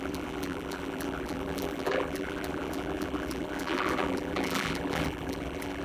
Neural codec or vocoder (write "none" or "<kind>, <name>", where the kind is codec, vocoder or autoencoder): vocoder, BigVGAN v2